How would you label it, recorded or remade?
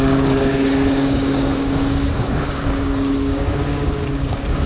remade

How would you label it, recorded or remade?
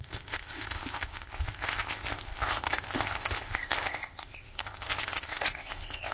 remade